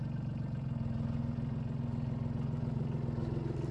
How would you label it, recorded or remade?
recorded